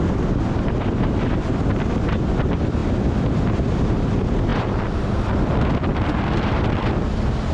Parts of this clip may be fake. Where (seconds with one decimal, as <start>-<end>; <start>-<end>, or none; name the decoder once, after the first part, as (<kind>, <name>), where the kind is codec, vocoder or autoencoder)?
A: none